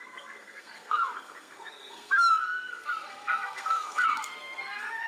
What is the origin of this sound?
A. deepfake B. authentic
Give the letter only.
A